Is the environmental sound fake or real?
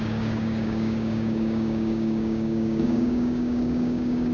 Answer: fake